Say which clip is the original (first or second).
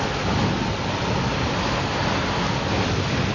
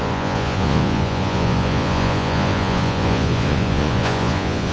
first